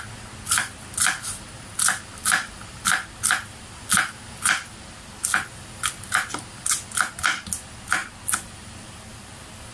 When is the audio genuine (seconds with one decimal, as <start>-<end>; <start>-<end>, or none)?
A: 0.0-9.7